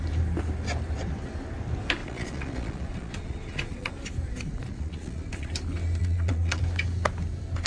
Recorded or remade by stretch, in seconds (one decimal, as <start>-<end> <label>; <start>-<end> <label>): 0.0-2.0 recorded; 2.0-3.9 remade; 3.9-4.3 recorded; 4.3-5.5 remade; 5.5-6.0 recorded; 6.0-6.6 remade; 6.6-7.7 recorded